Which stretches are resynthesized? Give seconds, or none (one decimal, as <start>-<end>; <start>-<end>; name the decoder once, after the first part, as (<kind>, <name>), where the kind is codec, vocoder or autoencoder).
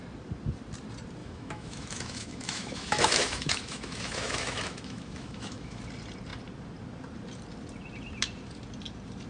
1.2-5.8 (autoencoder, DAC-VAE)